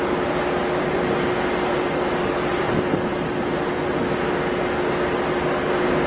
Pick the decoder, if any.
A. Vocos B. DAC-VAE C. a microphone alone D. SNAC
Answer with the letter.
C